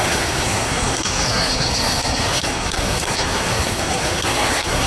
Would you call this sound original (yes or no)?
no